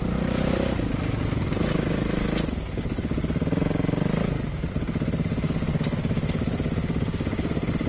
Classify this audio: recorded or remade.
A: recorded